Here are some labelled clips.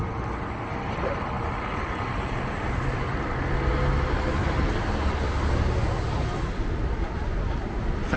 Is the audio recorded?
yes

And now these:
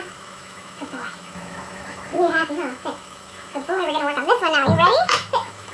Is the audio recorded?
no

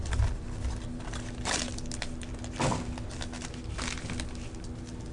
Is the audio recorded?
yes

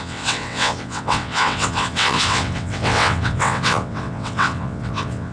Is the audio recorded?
no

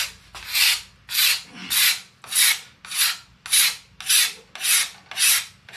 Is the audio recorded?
yes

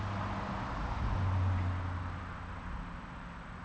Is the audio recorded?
yes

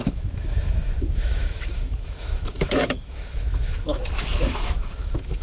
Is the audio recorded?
no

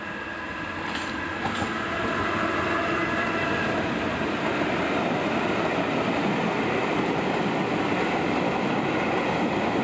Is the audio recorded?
yes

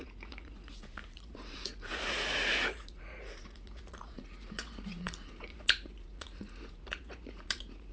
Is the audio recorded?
no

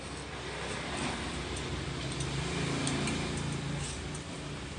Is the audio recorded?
yes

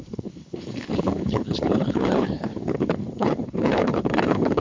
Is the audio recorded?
no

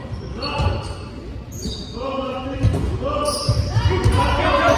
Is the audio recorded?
yes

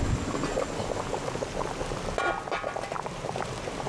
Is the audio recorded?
yes